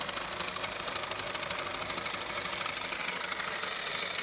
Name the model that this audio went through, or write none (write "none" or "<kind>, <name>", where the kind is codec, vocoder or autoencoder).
none